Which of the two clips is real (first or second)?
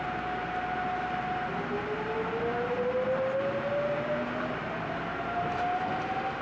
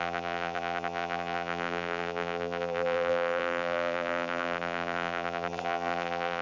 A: first